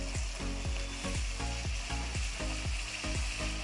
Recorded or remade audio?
recorded